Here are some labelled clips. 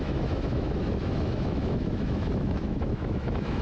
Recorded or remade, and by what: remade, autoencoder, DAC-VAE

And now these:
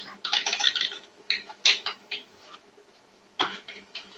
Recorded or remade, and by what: remade, autoencoder, DAC-VAE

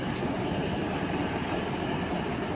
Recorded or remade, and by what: recorded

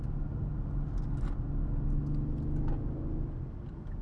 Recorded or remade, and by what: recorded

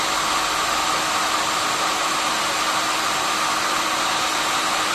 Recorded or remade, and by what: recorded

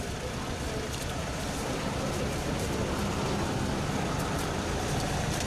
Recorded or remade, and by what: recorded